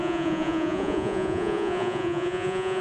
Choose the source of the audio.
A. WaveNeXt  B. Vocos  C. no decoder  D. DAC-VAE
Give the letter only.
B